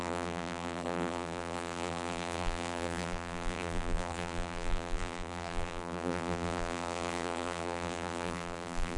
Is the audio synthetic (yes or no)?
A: yes